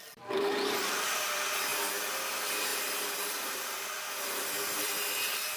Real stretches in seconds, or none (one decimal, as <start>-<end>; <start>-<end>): 1.7-2.3